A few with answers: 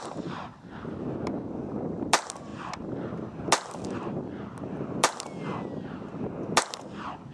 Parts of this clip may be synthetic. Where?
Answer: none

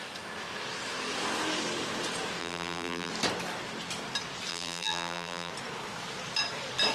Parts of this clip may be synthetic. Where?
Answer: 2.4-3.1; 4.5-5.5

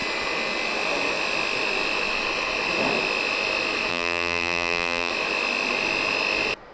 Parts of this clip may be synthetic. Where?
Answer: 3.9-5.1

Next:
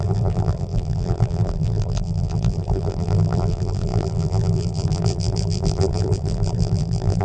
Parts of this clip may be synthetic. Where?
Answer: 0.0-7.2

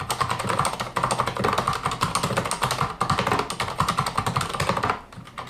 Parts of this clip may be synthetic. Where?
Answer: 0.0-0.9; 4.2-5.5